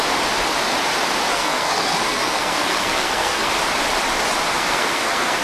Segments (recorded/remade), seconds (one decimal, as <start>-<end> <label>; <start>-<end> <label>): 0.0-1.3 recorded; 1.3-3.5 remade; 3.5-4.5 recorded; 4.5-5.4 remade